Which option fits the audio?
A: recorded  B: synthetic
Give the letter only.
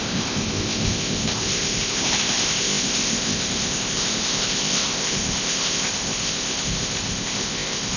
B